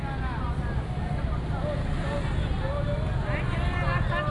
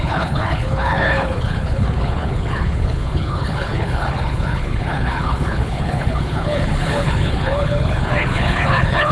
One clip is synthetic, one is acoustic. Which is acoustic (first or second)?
first